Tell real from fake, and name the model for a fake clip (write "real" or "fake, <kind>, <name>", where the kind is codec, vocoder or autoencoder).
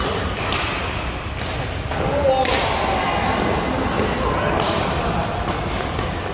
real